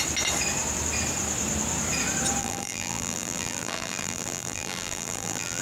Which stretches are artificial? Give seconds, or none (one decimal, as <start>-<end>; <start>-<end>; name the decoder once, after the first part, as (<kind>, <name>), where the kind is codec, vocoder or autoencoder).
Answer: 2.4-5.6 (vocoder, BigVGAN v2)